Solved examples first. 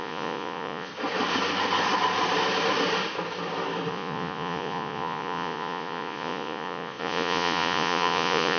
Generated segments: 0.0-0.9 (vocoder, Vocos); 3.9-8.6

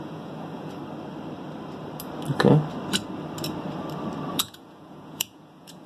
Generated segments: 0.0-0.8 (vocoder, Vocos); 4.3-5.9